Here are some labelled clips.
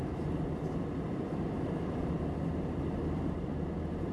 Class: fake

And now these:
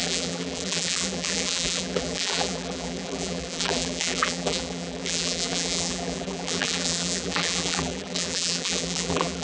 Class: fake